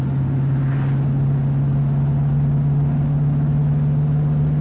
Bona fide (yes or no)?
yes